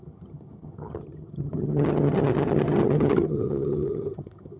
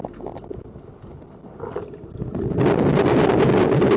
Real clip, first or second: second